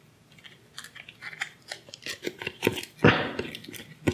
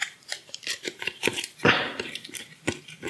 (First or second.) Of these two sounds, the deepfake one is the second